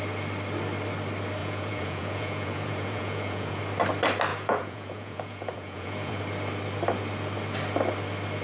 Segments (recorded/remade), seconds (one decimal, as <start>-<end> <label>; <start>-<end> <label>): 0.0-1.4 recorded; 1.4-3.6 remade; 3.6-4.3 recorded; 4.3-6.2 remade; 6.2-8.4 recorded